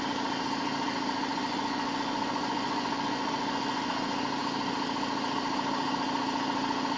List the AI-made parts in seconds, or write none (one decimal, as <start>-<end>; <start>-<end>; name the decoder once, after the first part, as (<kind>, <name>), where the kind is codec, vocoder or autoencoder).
1.3-3.9 (vocoder, Vocos)